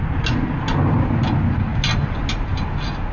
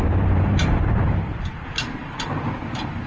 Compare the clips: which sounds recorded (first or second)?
first